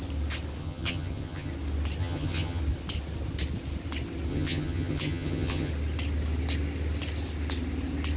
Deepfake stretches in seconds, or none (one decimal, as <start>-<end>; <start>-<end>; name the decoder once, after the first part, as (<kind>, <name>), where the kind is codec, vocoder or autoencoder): 0.6-1.5 (vocoder, HiFi-GAN); 2.0-2.6; 4.3-5.7